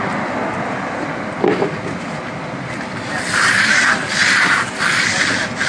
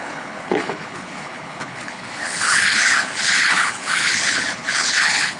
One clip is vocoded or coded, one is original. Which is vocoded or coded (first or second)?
second